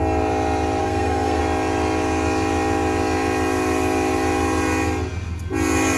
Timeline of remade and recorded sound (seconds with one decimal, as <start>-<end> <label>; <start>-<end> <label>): 0.0-0.8 recorded; 0.8-1.4 remade; 1.4-6.0 recorded